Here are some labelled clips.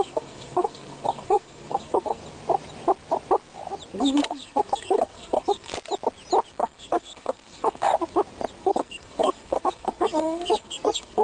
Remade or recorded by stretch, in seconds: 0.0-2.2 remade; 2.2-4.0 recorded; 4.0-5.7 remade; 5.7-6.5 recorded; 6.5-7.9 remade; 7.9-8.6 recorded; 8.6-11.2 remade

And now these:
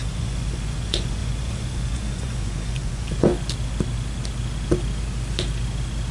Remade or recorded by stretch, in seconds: 0.0-3.3 remade; 3.3-6.1 recorded

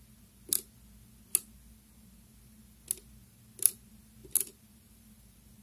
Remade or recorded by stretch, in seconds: 0.0-5.6 recorded

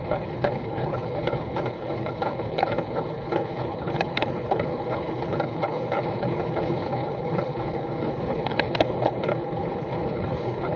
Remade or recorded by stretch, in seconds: 0.0-10.8 remade

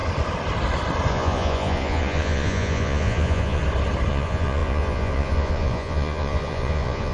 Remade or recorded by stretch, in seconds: 0.0-1.1 recorded; 1.1-3.6 remade; 3.6-4.1 recorded; 4.1-7.1 remade

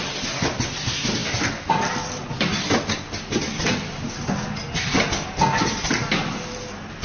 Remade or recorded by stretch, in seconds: 0.0-7.0 recorded

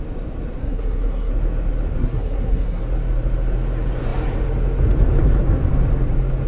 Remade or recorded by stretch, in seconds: 0.0-0.6 recorded; 0.6-1.3 remade; 1.3-2.0 recorded; 2.0-2.8 remade; 2.8-6.5 recorded

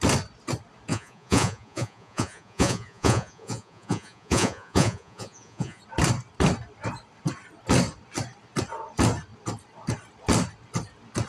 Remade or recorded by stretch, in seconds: 0.0-0.9 recorded; 0.9-5.8 remade; 5.8-11.3 recorded